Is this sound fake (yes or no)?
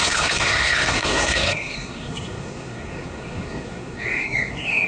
yes